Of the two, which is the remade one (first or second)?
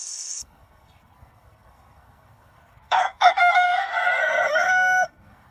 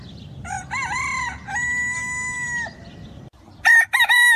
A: first